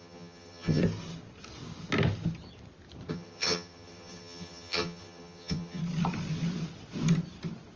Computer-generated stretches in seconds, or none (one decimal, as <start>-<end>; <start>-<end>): 0.0-0.8; 3.1-5.8